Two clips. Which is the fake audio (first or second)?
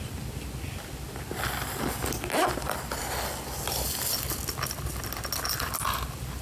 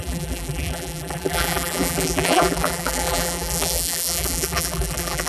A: second